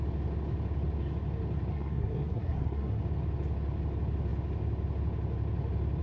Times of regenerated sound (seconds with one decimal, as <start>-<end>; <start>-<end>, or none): 1.7-3.0